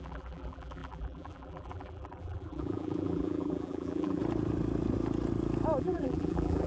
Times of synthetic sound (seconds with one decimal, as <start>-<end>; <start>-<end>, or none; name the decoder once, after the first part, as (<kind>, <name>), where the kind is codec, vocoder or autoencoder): 0.0-4.2 (vocoder, BigVGAN v2); 5.8-6.7